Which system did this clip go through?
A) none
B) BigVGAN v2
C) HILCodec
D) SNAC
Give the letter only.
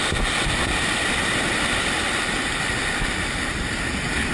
A